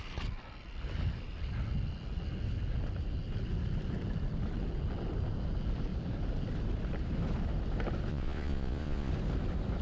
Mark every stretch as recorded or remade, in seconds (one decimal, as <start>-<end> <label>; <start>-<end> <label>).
0.0-8.1 recorded; 8.1-9.1 remade; 9.1-9.8 recorded